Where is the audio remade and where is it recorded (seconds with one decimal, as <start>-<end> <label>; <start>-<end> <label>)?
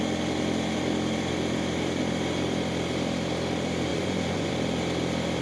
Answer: 0.0-3.9 recorded; 3.9-4.5 remade; 4.5-5.4 recorded